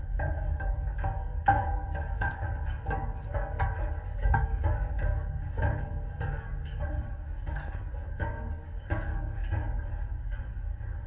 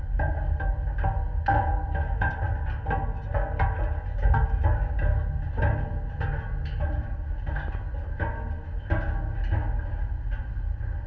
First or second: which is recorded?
second